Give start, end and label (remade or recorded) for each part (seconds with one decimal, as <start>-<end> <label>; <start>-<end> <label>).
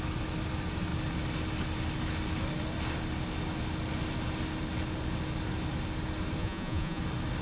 0.0-6.4 recorded; 6.4-7.0 remade; 7.0-7.4 recorded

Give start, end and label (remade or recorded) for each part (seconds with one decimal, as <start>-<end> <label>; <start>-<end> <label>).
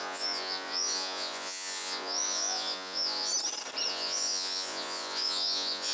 0.0-3.3 remade; 3.3-3.9 recorded; 3.9-5.9 remade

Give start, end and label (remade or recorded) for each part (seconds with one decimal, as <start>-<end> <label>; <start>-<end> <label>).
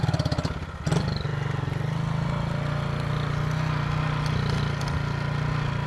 0.0-5.9 recorded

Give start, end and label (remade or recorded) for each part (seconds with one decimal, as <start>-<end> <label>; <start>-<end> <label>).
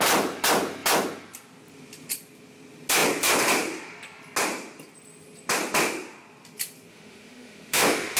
0.0-6.9 recorded; 6.9-8.2 remade